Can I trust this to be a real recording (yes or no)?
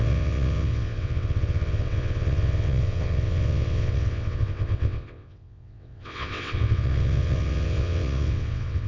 no